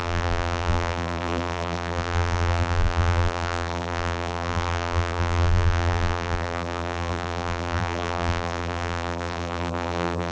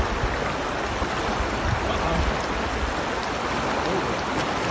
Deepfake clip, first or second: first